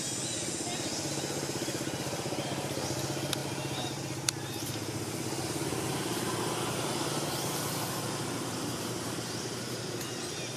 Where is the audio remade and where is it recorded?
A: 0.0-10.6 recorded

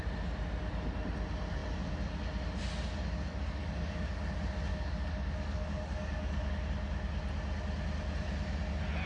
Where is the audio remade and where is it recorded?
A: 0.0-3.3 recorded; 3.3-4.2 remade; 4.2-4.7 recorded; 4.7-6.6 remade; 6.6-9.1 recorded

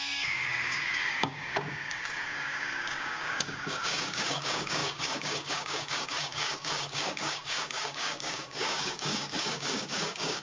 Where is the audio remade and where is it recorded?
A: 0.0-10.4 remade